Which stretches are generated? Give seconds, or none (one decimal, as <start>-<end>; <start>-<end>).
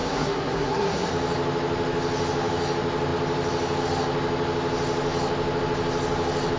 0.0-1.1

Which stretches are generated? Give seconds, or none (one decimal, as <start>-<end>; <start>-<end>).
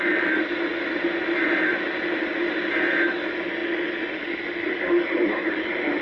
none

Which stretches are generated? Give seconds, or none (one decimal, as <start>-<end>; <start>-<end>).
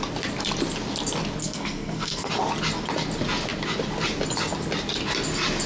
1.4-2.3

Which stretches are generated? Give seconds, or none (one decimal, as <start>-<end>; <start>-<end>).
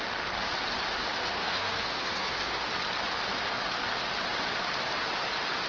1.2-2.7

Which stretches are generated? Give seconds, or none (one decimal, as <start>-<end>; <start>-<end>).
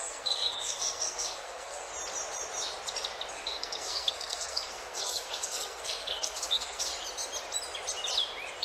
0.0-1.9; 3.3-6.9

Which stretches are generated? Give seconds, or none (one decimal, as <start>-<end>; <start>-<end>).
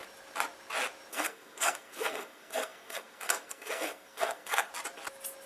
1.1-4.7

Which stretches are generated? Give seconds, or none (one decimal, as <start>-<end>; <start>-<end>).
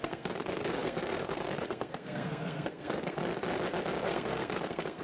0.0-3.3; 4.0-5.0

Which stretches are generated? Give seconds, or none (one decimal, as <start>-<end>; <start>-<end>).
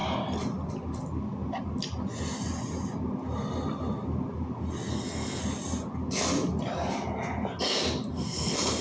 4.9-5.4; 8.1-8.8